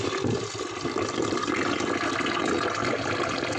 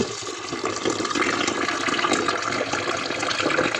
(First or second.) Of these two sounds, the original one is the second